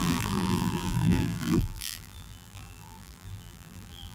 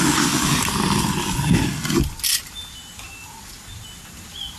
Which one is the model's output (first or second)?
first